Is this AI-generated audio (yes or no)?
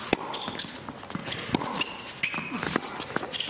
no